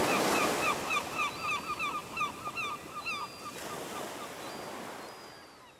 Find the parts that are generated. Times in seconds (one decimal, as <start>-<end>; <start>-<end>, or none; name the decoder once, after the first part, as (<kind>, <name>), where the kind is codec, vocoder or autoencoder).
none

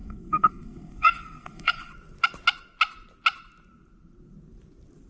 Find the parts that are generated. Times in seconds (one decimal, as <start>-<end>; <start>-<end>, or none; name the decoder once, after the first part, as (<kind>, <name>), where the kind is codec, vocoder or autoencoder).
0.0-1.9 (codec, SNAC)

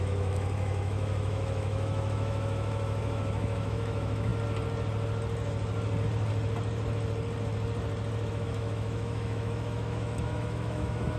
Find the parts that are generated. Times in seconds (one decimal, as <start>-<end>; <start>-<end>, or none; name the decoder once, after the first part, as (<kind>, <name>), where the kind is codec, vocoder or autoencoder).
0.0-4.3 (autoencoder, DAC-VAE); 8.3-11.2

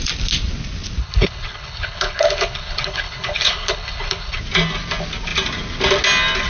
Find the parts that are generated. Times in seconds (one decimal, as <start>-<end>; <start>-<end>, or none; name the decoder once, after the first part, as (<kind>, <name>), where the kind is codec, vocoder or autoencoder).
1.0-4.4 (codec, HILCodec)

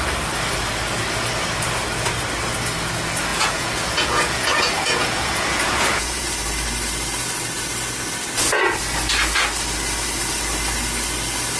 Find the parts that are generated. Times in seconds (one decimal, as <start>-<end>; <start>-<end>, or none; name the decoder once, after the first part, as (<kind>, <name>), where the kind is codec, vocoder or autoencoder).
3.3-6.3 (vocoder, Vocos)

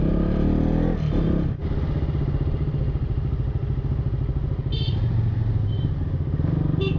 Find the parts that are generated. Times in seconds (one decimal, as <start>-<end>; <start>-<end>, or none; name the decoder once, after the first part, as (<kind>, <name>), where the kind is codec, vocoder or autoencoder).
none